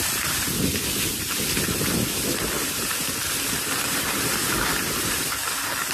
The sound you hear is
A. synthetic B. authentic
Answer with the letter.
B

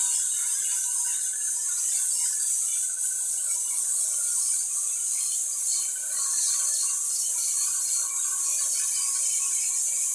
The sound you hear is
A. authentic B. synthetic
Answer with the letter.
A